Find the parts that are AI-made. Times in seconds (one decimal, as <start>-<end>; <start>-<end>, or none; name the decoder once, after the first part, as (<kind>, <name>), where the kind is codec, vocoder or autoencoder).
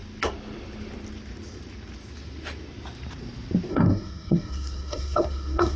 3.7-5.8 (codec, SNAC)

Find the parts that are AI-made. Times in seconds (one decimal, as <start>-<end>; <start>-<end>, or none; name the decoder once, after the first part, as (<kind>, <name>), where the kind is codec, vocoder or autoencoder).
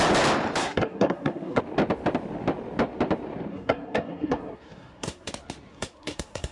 0.6-1.6 (codec, SNAC); 3.5-5.3; 5.7-6.5